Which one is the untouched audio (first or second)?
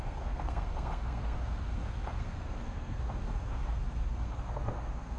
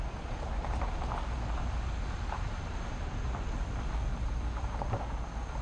second